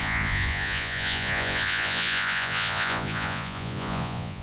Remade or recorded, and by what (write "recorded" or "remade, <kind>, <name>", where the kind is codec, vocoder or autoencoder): remade, vocoder, Vocos